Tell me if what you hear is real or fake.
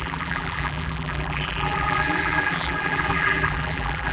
fake